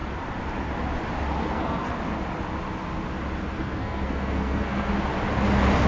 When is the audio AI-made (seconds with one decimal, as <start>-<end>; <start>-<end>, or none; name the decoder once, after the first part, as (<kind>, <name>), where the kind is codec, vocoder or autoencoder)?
1.4-2.0 (codec, SNAC); 3.5-4.9

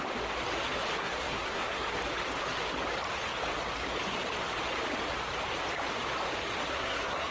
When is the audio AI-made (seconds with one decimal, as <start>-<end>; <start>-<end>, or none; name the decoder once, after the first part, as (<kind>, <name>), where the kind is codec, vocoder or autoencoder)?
1.0-2.0 (codec, SNAC); 6.7-7.3

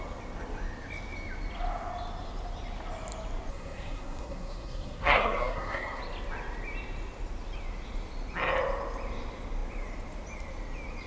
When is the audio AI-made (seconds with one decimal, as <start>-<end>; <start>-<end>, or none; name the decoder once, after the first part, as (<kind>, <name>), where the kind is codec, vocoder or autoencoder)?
3.5-6.0 (codec, SNAC)

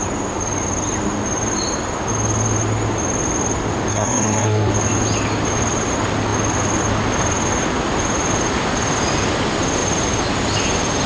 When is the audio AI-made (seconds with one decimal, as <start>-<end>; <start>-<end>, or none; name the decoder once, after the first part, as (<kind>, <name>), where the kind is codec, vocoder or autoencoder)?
3.9-4.7 (codec, SNAC)

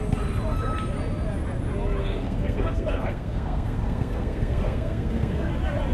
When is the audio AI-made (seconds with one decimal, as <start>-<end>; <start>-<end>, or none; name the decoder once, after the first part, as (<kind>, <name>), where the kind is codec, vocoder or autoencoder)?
2.0-5.5 (codec, SNAC)